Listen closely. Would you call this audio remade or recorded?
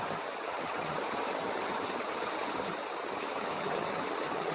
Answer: remade